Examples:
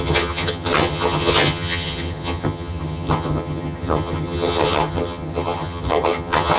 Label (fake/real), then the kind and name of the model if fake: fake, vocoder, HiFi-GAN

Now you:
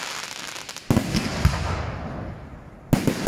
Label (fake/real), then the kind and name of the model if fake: real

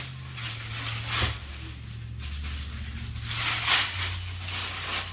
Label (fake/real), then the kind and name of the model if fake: real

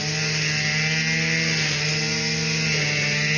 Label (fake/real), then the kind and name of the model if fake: real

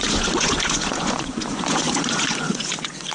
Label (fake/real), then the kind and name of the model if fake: fake, vocoder, Vocos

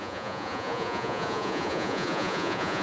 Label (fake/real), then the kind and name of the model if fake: fake, vocoder, Vocos